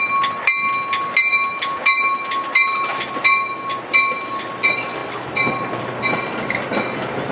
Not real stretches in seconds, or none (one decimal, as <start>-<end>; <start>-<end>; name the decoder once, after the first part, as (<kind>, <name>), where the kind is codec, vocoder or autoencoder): none

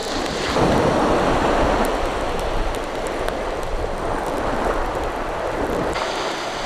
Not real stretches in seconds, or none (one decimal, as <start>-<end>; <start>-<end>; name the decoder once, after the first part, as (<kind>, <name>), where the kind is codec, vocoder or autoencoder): 0.0-6.7 (vocoder, BigVGAN v2)

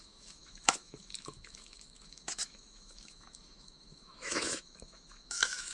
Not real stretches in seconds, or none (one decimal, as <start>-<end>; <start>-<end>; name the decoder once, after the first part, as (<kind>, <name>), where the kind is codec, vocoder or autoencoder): 0.0-5.7 (autoencoder, DAC-VAE)